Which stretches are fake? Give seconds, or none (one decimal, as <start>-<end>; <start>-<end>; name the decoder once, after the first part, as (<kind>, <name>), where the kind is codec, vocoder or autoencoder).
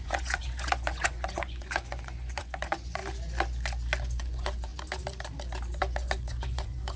0.0-3.0 (vocoder, Vocos); 4.0-4.7; 5.8-7.0